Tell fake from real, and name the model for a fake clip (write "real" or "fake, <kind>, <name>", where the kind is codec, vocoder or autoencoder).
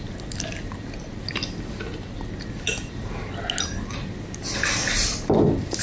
real